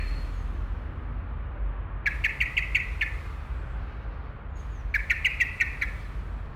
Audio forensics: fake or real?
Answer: real